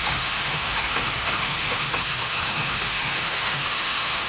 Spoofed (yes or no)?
yes